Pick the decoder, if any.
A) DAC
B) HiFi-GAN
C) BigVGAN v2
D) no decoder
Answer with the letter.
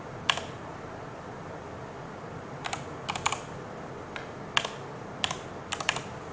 D